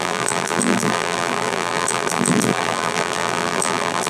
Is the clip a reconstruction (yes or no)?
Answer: yes